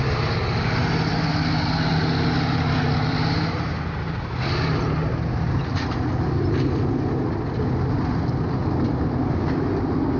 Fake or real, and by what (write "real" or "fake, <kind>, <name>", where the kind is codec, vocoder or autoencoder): real